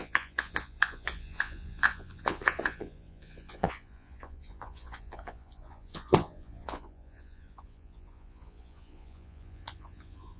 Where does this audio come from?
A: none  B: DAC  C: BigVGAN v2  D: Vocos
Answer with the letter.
D